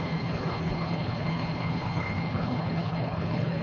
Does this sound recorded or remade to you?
remade